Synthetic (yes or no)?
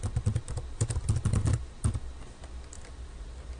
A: no